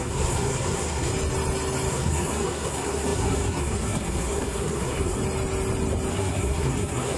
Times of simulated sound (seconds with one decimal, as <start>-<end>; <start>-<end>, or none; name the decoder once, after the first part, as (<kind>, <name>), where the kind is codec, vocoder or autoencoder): 0.0-1.1 (codec, SNAC); 1.9-5.2; 6.1-7.2